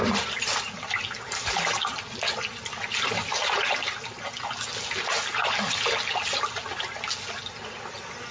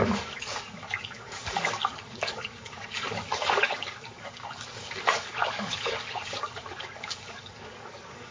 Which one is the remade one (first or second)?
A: second